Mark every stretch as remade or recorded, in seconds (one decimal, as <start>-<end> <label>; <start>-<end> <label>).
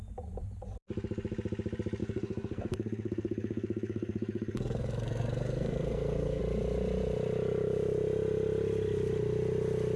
0.0-2.0 recorded; 2.0-6.4 remade; 6.4-10.0 recorded